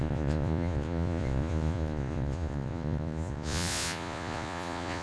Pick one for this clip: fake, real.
fake